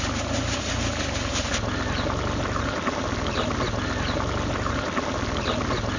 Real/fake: real